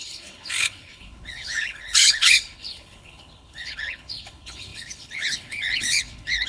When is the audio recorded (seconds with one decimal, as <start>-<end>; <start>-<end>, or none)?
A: none